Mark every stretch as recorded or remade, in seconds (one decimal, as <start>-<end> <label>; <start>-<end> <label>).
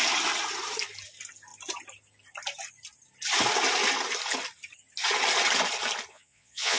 0.0-6.1 recorded; 6.1-6.8 remade